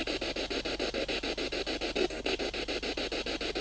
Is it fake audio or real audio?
real